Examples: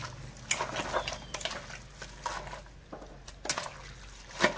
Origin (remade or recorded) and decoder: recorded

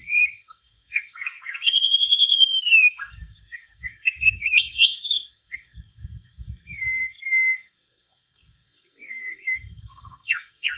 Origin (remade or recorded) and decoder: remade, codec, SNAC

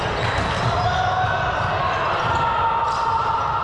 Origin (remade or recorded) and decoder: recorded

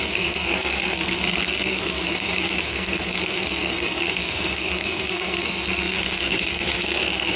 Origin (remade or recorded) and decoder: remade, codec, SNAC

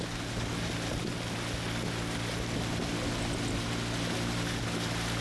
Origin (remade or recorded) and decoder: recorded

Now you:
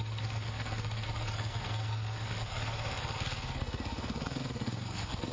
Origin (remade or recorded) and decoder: remade, codec, SNAC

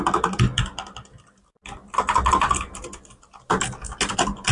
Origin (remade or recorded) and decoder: recorded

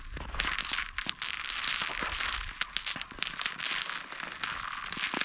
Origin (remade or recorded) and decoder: recorded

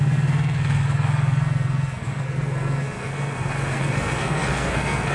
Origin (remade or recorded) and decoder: remade, codec, SNAC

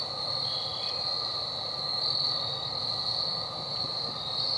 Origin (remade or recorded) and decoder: recorded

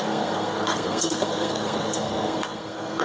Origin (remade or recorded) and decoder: remade, codec, SNAC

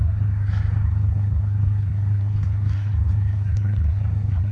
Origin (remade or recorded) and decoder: remade, codec, SNAC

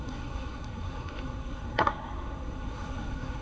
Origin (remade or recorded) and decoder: remade, codec, SNAC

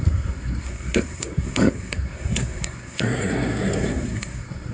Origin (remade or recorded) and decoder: remade, codec, SNAC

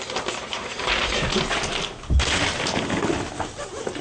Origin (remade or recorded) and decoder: recorded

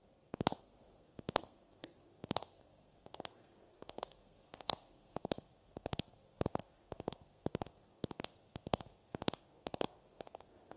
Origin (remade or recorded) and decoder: remade, codec, SNAC